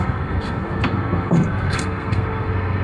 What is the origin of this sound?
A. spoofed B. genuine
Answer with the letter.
A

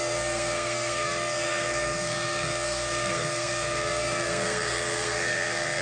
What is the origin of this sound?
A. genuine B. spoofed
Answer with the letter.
B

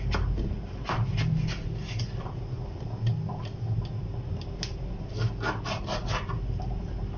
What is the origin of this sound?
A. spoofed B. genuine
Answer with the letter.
B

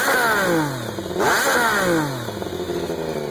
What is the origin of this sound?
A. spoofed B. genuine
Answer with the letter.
B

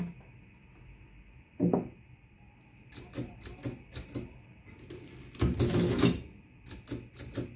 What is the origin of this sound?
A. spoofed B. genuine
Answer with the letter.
B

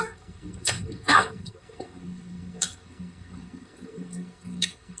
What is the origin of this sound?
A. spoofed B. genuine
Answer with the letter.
A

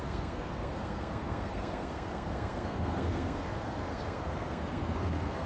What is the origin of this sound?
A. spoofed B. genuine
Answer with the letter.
A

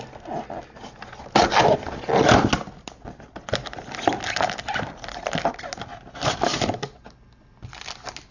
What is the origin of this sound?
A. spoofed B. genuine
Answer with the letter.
B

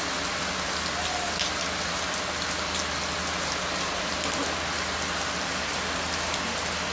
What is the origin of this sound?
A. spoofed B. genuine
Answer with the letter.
B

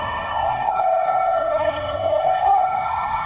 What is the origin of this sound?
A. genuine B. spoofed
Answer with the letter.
B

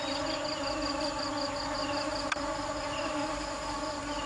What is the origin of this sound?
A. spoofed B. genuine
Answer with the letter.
B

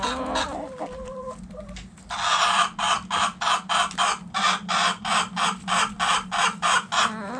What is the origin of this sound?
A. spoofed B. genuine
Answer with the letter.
B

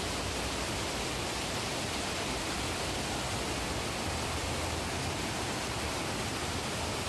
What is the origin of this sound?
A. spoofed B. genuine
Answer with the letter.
B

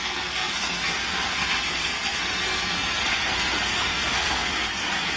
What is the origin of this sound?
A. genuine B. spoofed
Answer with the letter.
B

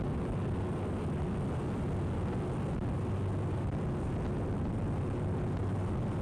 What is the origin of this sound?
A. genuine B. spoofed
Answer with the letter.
A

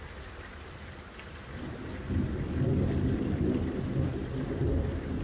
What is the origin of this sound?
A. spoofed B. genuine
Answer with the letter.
B